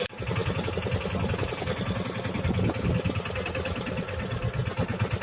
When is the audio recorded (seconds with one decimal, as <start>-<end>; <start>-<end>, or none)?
0.0-5.2

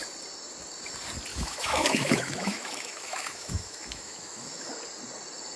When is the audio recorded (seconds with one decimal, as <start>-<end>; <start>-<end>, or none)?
0.0-1.3; 4.7-5.6

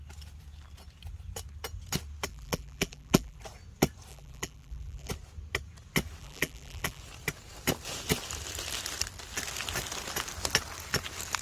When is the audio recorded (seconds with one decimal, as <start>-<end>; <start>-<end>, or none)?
0.0-2.3; 3.4-4.1; 5.1-6.2; 7.0-11.4

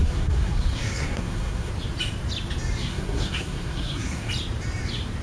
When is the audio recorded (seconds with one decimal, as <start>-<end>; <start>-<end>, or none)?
1.7-2.8; 4.3-5.2

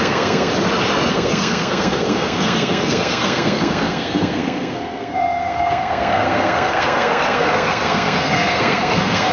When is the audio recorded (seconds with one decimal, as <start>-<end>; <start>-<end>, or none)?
0.5-1.1

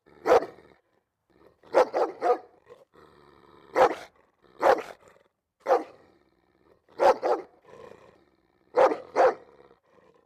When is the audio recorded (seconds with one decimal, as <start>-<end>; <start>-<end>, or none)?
none

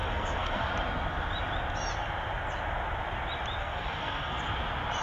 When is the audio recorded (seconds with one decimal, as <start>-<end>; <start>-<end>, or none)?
0.7-3.6; 4.4-5.0